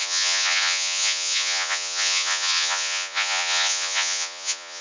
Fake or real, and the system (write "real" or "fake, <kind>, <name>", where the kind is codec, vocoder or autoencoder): fake, vocoder, Vocos